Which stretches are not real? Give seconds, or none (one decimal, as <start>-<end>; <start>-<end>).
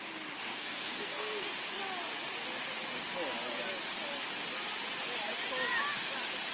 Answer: 0.5-1.5